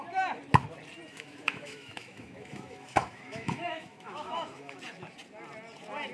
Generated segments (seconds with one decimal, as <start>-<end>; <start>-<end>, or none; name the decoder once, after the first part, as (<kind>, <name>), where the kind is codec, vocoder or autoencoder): 1.1-4.8 (autoencoder, DAC-VAE)